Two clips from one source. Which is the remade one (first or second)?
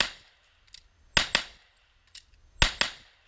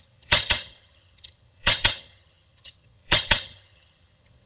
second